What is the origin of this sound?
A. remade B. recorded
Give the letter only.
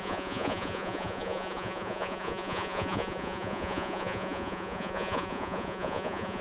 A